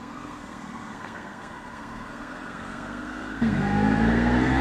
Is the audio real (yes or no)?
no